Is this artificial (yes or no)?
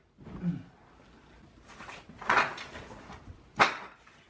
no